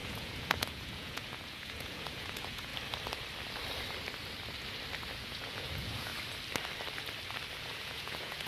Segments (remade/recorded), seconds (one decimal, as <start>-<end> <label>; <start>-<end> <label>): 0.0-2.7 remade; 2.7-5.1 recorded; 5.1-6.1 remade; 6.1-7.6 recorded; 7.6-8.5 remade